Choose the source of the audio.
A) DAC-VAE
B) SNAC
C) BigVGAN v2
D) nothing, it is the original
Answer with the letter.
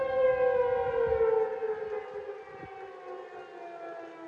D